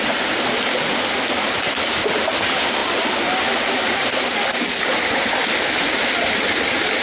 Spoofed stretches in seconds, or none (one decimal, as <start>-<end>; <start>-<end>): none

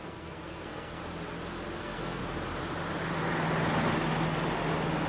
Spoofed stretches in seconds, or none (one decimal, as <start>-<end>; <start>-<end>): 0.0-1.0; 1.8-2.2